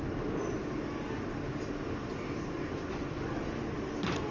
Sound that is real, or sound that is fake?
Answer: real